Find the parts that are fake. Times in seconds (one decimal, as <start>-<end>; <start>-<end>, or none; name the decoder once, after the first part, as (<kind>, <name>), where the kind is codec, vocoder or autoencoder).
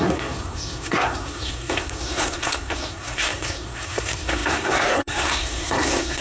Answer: 0.0-6.2 (codec, SNAC)